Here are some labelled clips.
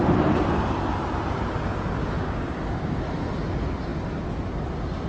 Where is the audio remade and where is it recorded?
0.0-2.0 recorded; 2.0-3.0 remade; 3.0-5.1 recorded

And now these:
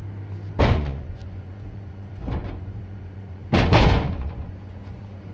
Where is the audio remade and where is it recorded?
0.0-0.6 recorded; 0.6-5.3 remade

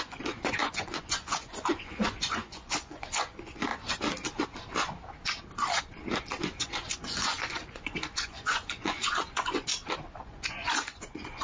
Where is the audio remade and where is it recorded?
0.0-3.7 remade; 3.7-6.4 recorded; 6.4-9.7 remade; 9.7-10.2 recorded; 10.2-11.4 remade

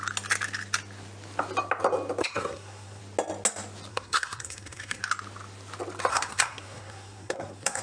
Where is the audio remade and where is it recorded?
0.0-2.2 recorded; 2.2-3.0 remade; 3.0-3.9 recorded; 3.9-5.0 remade; 5.0-6.1 recorded; 6.1-7.8 remade